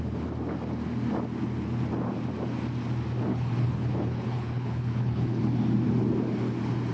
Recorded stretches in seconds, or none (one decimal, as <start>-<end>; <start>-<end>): 0.0-3.3; 5.4-6.9